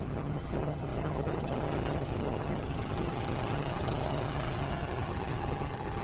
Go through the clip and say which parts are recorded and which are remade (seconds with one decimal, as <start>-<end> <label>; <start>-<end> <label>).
0.0-6.0 remade